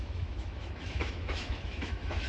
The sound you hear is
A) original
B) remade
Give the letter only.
B